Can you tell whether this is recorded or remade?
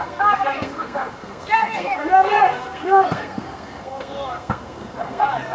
remade